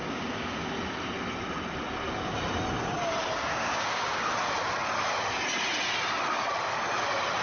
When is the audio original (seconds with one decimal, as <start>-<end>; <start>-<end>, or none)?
0.7-3.5; 4.3-7.4

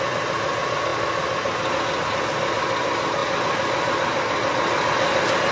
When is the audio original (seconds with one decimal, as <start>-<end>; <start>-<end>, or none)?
0.0-5.5